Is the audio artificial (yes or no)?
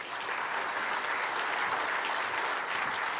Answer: no